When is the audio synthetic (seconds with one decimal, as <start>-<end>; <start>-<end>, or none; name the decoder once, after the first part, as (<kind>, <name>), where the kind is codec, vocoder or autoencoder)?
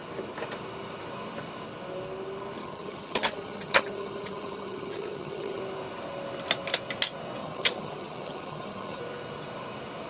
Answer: 2.6-5.6 (vocoder, HiFi-GAN); 7.4-9.0